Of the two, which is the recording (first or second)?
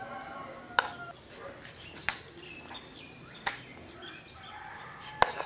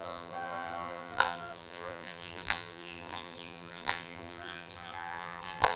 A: first